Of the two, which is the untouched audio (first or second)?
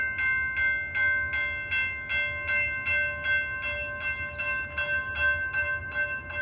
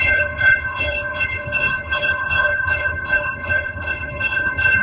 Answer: first